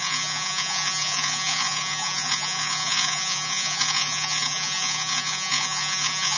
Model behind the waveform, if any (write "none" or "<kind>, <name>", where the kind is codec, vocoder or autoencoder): vocoder, Vocos